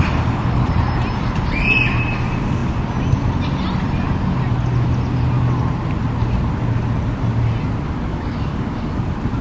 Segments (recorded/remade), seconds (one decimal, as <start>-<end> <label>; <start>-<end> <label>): 0.0-8.1 recorded; 8.1-9.0 remade; 9.0-9.4 recorded

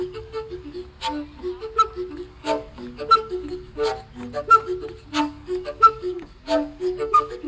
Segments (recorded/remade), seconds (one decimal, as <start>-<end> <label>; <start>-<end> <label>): 0.0-0.8 remade; 0.8-2.1 recorded; 2.1-3.9 remade; 3.9-5.2 recorded; 5.2-7.5 remade

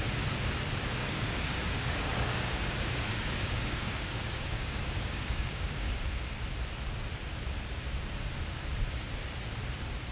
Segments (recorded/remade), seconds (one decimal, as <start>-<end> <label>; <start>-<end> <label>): 0.0-1.0 recorded; 1.0-5.9 remade; 5.9-10.1 recorded

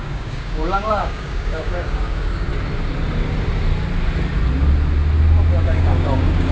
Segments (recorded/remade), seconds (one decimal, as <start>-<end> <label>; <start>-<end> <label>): 0.0-2.5 remade; 2.5-5.6 recorded; 5.6-6.5 remade

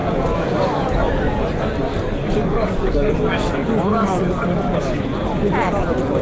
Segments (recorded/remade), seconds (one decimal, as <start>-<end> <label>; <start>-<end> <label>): 0.0-1.4 remade; 1.4-1.9 recorded; 1.9-3.1 remade; 3.1-3.9 recorded; 3.9-4.8 remade; 4.8-6.2 recorded

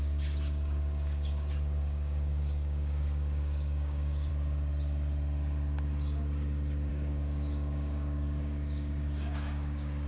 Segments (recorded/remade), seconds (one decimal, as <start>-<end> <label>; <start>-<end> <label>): 0.0-4.3 remade; 4.3-6.9 recorded; 6.9-10.1 remade